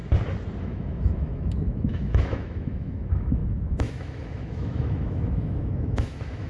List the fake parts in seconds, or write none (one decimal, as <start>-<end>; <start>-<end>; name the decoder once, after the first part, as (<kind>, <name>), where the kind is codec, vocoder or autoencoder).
0.6-6.5 (autoencoder, DAC-VAE)